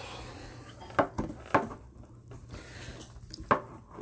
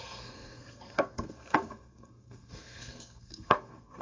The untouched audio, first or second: first